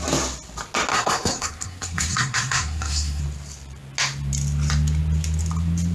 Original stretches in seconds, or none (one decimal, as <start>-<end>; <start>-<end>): 0.0-0.9; 3.2-5.9